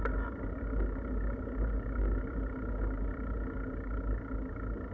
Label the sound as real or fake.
real